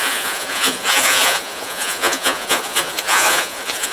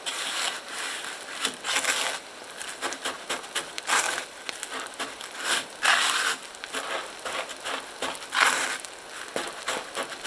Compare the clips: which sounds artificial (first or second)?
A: first